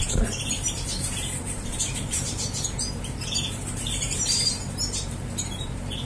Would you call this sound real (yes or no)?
no